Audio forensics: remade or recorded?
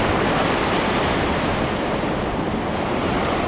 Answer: recorded